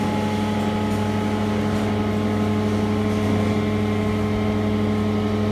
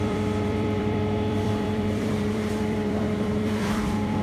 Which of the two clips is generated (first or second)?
second